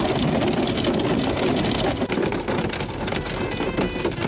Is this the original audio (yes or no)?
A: yes